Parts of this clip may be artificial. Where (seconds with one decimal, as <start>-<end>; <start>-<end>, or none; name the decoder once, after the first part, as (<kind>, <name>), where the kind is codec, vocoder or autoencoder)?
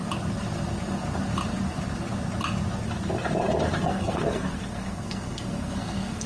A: 3.8-6.3 (codec, SNAC)